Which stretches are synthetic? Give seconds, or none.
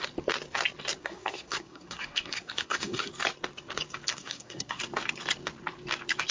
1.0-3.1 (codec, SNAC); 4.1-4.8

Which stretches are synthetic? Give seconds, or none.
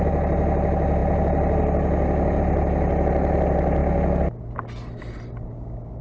none